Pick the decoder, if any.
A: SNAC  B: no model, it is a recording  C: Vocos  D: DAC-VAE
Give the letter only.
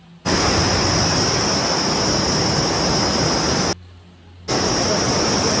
B